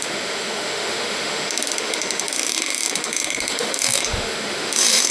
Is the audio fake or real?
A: fake